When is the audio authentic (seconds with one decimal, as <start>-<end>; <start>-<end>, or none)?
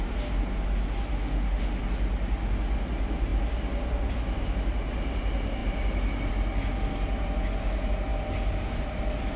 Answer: 0.0-1.1; 1.8-9.4